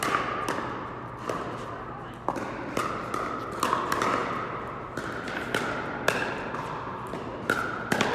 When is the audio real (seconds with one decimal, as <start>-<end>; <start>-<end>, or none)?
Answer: 0.0-8.1